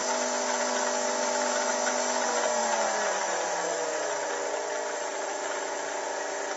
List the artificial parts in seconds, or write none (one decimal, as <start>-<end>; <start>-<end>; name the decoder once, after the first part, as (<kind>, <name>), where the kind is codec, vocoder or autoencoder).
none